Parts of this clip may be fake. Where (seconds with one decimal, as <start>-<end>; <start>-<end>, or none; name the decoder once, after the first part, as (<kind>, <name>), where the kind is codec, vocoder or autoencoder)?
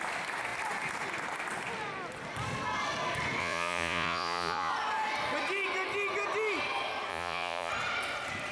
3.4-4.7 (vocoder, Vocos); 7.1-7.7